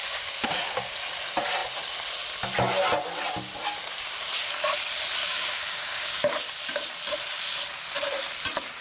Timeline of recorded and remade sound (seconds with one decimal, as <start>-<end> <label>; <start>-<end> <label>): 0.0-0.9 remade; 0.9-5.2 recorded; 5.2-6.3 remade; 6.3-8.8 recorded